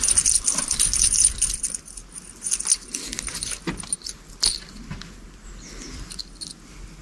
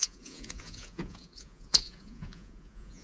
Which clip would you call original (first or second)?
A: first